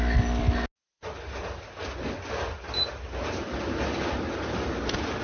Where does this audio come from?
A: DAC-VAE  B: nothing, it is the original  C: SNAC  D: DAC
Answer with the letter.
B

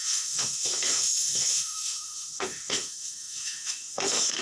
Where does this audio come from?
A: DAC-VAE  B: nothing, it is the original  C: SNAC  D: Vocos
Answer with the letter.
A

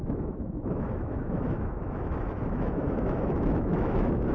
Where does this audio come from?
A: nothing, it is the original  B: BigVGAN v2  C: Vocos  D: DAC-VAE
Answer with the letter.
D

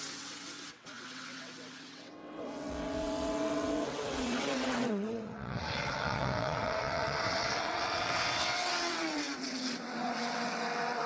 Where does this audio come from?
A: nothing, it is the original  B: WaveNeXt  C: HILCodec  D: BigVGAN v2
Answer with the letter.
B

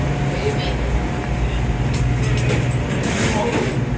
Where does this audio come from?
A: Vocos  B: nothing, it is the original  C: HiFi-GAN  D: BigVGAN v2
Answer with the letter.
B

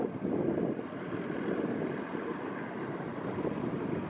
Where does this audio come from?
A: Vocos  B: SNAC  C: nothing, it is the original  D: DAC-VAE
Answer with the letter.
C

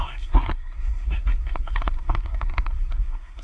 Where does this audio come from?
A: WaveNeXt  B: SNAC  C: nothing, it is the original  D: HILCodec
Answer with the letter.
B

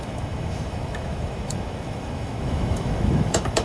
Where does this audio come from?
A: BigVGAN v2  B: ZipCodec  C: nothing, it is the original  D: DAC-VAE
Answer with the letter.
D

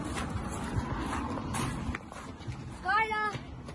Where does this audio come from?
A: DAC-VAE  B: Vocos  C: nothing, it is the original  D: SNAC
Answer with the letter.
C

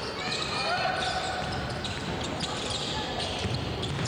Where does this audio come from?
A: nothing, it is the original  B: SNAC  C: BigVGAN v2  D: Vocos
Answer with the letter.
A